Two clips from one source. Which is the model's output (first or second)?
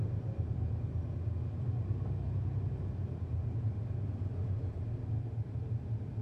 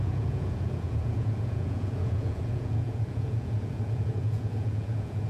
second